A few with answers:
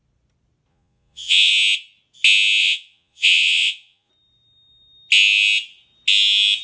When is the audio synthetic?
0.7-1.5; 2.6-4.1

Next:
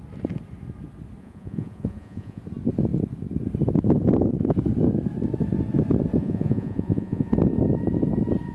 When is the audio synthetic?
1.2-2.4; 6.2-7.3

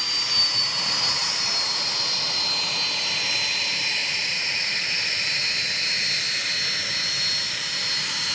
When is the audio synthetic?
4.0-5.0

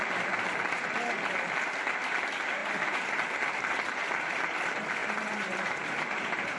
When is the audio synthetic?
5.0-6.6

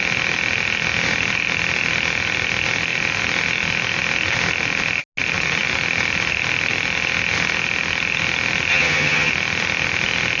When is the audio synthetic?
8.7-9.3